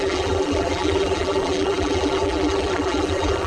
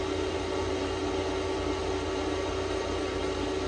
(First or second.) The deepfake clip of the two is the first